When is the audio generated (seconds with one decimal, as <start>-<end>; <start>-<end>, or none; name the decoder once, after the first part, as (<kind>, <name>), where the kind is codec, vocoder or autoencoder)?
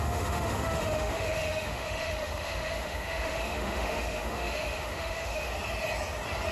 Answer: 0.0-5.5 (autoencoder, DAC-VAE)